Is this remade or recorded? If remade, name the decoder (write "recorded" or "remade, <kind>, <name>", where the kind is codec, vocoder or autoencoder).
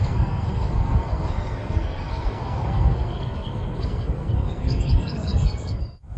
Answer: remade, codec, SNAC